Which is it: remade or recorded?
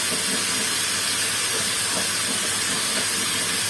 recorded